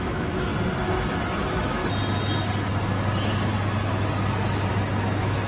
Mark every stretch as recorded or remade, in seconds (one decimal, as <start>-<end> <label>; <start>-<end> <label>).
0.0-0.5 remade; 0.5-1.4 recorded; 1.4-1.8 remade; 1.8-4.7 recorded; 4.7-5.5 remade